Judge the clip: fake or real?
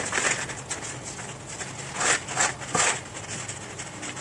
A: real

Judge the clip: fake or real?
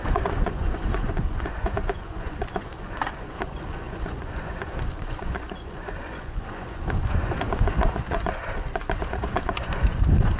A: fake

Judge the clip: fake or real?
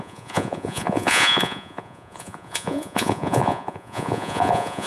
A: fake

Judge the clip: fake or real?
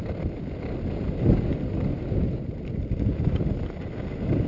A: real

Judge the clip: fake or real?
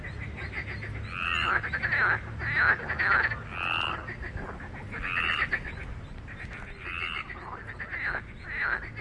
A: real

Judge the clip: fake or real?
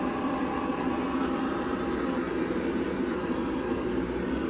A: real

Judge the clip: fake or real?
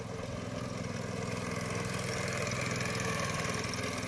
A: real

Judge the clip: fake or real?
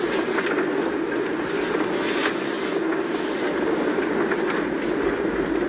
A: real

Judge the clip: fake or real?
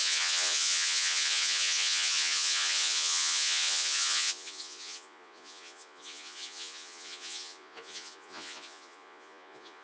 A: fake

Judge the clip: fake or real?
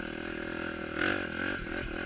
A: real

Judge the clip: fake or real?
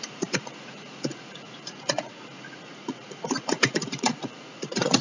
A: fake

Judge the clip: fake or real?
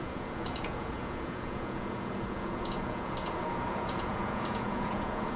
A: fake